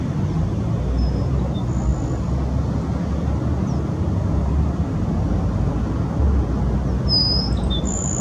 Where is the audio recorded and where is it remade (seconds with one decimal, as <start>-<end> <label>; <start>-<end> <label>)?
0.0-8.2 recorded